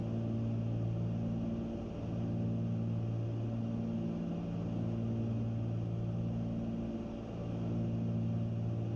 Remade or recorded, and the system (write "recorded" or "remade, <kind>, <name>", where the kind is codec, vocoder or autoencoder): recorded